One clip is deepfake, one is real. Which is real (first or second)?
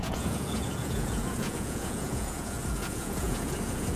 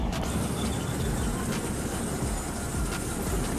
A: second